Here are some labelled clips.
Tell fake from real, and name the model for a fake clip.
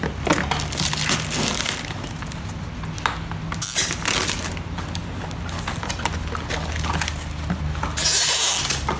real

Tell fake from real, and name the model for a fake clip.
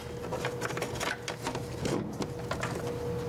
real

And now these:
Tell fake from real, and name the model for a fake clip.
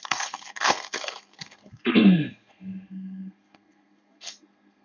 fake, codec, SNAC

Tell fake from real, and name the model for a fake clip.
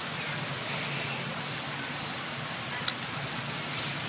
real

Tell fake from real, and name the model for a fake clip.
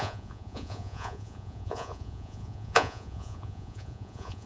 fake, vocoder, Vocos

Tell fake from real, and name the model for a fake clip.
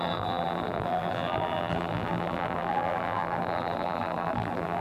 fake, vocoder, BigVGAN v2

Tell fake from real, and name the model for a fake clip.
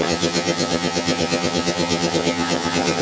fake, vocoder, HiFi-GAN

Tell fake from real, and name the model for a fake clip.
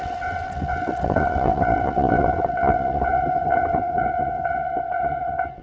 fake, vocoder, WaveNeXt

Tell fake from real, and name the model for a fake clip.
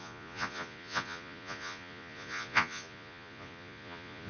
fake, vocoder, Vocos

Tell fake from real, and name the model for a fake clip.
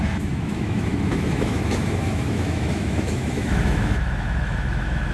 fake, autoencoder, DAC-VAE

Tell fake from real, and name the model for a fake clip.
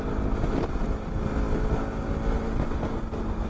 real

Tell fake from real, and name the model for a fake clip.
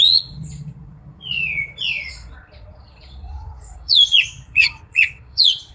fake, vocoder, Vocos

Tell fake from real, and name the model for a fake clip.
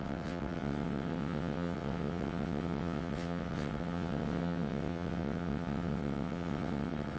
fake, vocoder, WaveNeXt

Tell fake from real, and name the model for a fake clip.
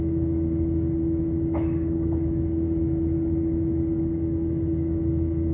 fake, autoencoder, DAC-VAE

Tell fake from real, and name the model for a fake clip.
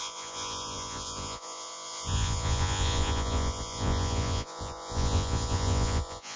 fake, vocoder, Vocos